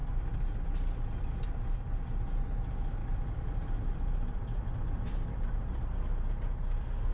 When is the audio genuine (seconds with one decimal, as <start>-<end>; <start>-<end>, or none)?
2.3-3.0; 6.0-7.1